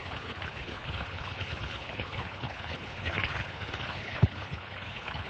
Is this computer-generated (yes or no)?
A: yes